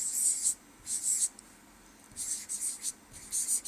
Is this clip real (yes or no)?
yes